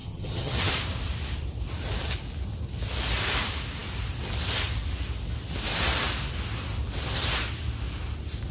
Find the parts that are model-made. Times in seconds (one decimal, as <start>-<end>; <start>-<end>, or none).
0.0-0.7